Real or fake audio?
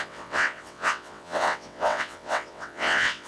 fake